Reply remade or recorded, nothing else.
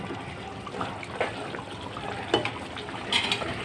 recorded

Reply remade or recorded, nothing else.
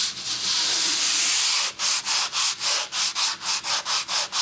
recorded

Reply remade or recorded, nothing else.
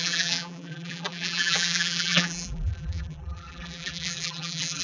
remade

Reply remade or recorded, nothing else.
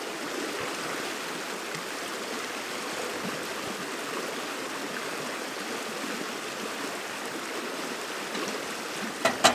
recorded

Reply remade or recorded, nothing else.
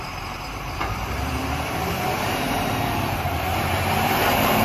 remade